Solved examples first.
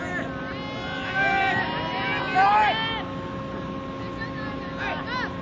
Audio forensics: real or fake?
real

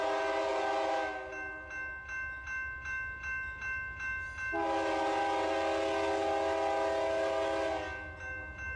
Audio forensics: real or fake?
real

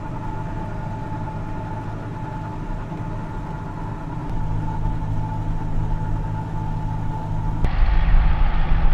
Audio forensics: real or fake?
real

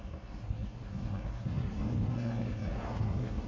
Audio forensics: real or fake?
fake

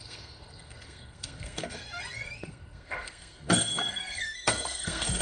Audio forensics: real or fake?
fake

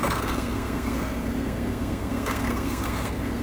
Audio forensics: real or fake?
fake